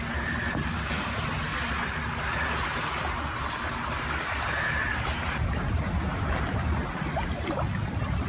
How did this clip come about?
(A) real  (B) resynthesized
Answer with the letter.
A